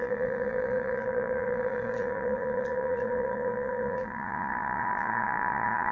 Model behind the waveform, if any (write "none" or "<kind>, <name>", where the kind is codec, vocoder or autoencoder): vocoder, Vocos